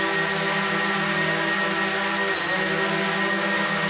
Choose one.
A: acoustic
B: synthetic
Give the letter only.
A